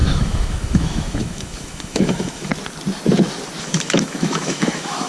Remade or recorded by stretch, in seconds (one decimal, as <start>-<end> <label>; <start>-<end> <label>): 0.0-2.5 remade; 2.5-3.6 recorded; 3.6-5.1 remade